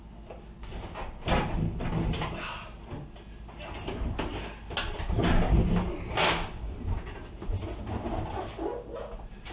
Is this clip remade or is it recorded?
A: recorded